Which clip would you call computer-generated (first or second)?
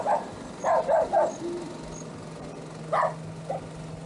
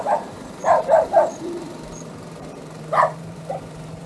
second